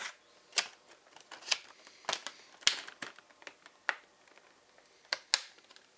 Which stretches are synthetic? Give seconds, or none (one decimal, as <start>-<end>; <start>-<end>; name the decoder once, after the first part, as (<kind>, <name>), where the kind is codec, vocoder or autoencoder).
none